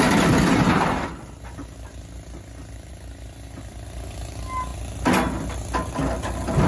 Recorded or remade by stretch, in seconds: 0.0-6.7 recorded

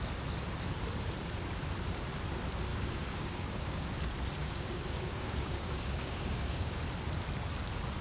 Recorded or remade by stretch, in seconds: 0.0-2.7 recorded; 2.7-4.0 remade; 4.0-4.4 recorded; 4.4-6.8 remade; 6.8-8.0 recorded

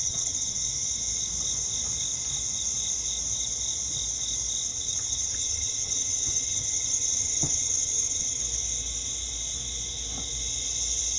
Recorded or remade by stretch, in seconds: 0.0-0.6 remade; 0.6-4.7 recorded; 4.7-8.4 remade; 8.4-11.2 recorded